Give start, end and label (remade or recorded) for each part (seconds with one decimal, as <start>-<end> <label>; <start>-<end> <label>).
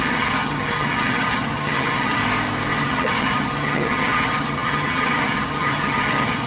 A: 0.0-2.2 remade; 2.2-2.8 recorded; 2.8-6.5 remade